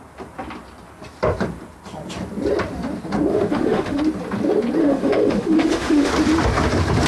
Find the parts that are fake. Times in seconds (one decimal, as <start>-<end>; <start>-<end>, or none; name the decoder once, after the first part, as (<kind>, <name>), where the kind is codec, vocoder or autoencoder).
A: 3.3-4.0 (autoencoder, DAC-VAE); 4.8-6.1